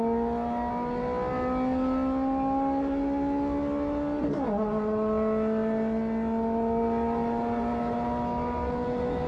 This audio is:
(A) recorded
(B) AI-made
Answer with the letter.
A